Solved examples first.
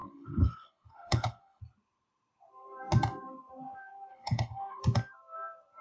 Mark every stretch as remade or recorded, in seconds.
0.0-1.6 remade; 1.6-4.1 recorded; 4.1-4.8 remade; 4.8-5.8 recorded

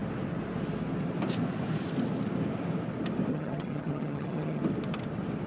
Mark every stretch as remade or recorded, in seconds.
0.0-3.3 recorded; 3.3-4.6 remade; 4.6-5.5 recorded

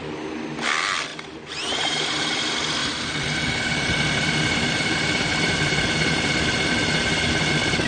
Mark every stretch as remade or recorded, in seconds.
0.0-1.1 recorded; 1.1-2.4 remade; 2.4-2.8 recorded; 2.8-7.5 remade; 7.5-7.9 recorded

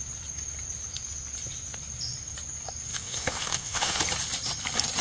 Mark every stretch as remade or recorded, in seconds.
0.0-2.9 recorded; 2.9-4.0 remade; 4.0-5.0 recorded

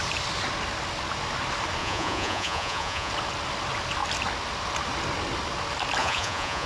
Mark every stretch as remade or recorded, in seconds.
0.0-1.8 recorded; 1.8-3.1 remade; 3.1-6.0 recorded; 6.0-6.7 remade

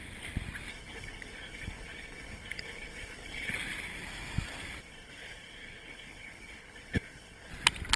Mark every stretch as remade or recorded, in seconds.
0.0-0.7 recorded; 0.7-3.5 remade; 3.5-4.8 recorded; 4.8-7.5 remade; 7.5-8.0 recorded

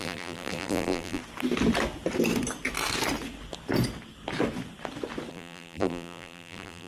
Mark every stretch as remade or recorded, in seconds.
0.0-1.2 remade; 1.2-5.3 recorded; 5.3-6.9 remade